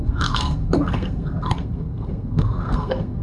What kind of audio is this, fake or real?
fake